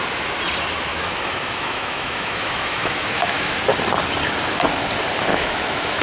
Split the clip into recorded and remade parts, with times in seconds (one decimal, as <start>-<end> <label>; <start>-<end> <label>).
0.0-0.9 recorded; 0.9-3.6 remade; 3.6-5.3 recorded; 5.3-6.0 remade

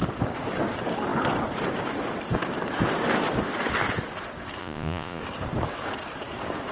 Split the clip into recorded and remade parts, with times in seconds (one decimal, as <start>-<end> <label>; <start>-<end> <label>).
0.0-4.6 recorded; 4.6-5.2 remade; 5.2-6.7 recorded

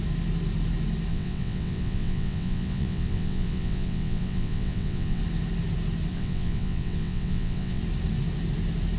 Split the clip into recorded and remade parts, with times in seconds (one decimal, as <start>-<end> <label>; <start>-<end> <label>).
0.0-1.1 recorded; 1.1-5.2 remade; 5.2-6.1 recorded; 6.1-7.8 remade; 7.8-9.0 recorded

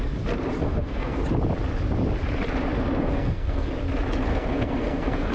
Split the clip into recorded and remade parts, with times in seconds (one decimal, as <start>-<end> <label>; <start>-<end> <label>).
0.0-0.6 recorded; 0.6-1.2 remade; 1.2-3.0 recorded; 3.0-3.7 remade; 3.7-4.3 recorded; 4.3-5.3 remade

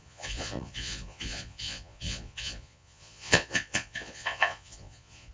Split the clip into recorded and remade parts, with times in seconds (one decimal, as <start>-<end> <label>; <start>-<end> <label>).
0.0-5.3 remade

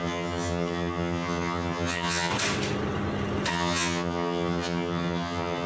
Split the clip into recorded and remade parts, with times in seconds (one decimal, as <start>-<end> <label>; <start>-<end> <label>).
0.0-2.3 remade; 2.3-3.5 recorded; 3.5-5.7 remade

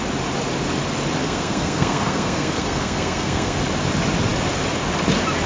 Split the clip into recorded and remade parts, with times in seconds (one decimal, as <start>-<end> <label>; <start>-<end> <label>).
0.0-1.2 recorded; 1.2-3.6 remade; 3.6-5.5 recorded

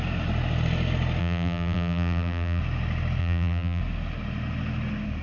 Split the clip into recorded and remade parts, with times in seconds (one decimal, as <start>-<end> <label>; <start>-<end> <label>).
0.0-1.2 recorded; 1.2-2.6 remade; 2.6-3.2 recorded; 3.2-3.8 remade; 3.8-5.2 recorded